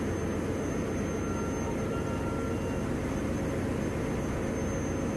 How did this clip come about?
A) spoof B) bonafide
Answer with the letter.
B